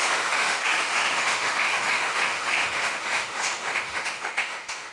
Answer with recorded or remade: remade